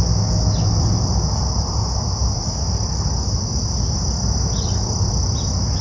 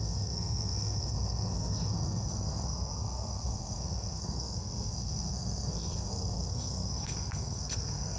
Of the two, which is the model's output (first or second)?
second